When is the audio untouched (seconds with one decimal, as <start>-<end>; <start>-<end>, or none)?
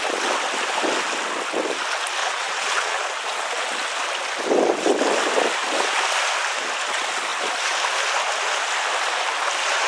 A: 0.0-2.2; 3.0-9.9